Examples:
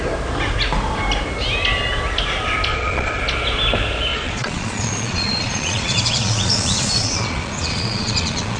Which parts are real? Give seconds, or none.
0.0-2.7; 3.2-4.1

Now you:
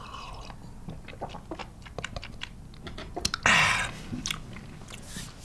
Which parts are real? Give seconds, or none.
0.0-5.4

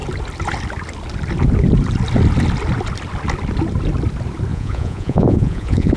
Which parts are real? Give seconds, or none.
0.0-4.5

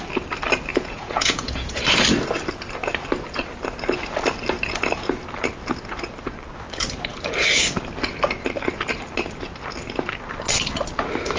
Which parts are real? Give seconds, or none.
0.0-0.7; 1.8-11.4

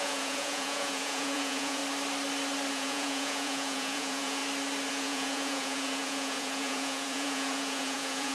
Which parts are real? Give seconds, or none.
1.8-2.7; 4.4-4.9